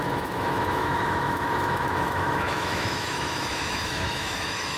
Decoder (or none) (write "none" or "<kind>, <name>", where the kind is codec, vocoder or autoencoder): autoencoder, DAC-VAE